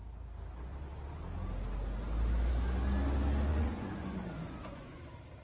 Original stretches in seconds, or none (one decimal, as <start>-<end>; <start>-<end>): 0.0-3.5; 5.0-5.4